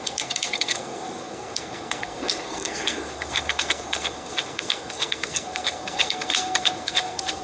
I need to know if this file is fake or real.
fake